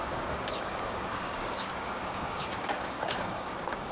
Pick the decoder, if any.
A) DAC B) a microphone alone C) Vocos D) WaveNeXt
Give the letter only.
A